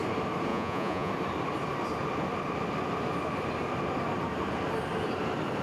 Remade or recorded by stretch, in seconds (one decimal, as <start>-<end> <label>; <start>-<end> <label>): 0.0-0.5 recorded; 0.5-1.1 remade; 1.1-5.6 recorded